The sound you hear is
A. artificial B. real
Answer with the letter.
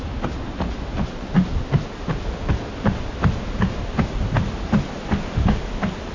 B